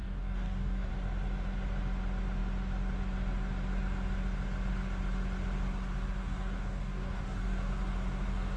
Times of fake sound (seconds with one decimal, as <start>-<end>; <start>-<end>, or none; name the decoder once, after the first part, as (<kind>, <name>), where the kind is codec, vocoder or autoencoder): 0.0-0.9 (codec, DAC); 6.2-7.7